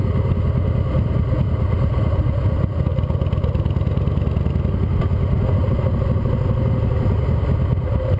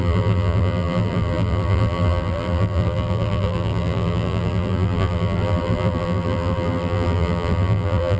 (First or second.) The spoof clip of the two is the second